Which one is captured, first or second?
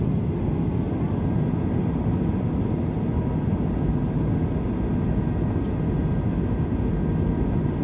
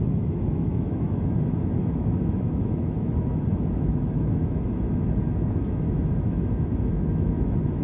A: first